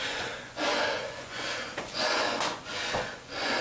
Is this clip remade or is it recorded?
remade